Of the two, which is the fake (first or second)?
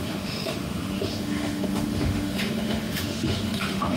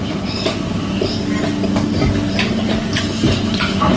first